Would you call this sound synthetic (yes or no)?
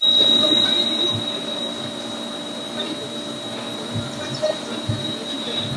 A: no